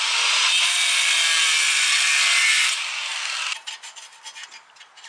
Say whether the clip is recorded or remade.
recorded